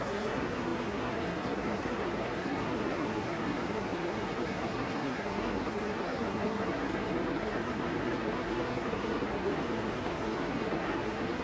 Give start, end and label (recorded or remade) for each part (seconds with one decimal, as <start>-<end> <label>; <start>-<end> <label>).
0.0-11.4 remade